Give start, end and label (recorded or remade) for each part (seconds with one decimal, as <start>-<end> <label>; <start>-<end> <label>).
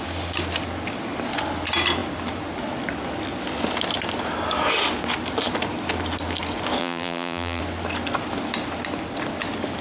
0.0-6.8 recorded; 6.8-7.6 remade; 7.6-9.8 recorded